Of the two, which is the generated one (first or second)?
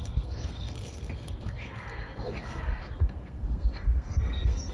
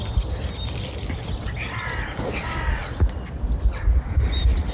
first